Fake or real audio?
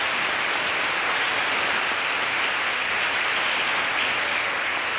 real